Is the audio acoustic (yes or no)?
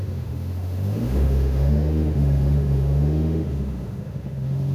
no